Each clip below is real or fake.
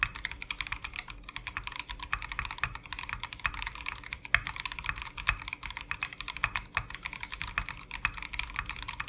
real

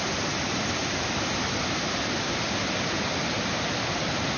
fake